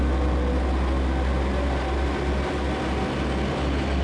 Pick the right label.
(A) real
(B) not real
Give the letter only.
A